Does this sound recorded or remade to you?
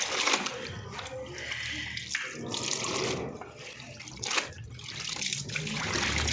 recorded